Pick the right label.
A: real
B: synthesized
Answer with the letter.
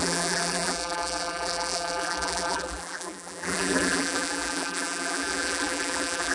B